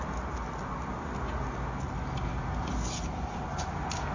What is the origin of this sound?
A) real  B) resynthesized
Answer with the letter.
A